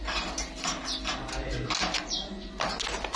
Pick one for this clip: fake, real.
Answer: real